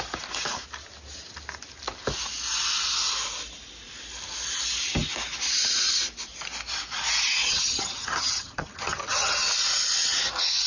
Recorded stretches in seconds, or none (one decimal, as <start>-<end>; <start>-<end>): 0.0-7.5; 9.5-10.7